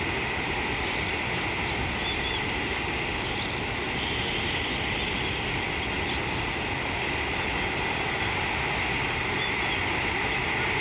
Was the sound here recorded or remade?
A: recorded